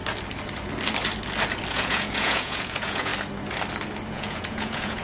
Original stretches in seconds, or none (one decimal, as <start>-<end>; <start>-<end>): 0.0-1.7; 3.1-4.1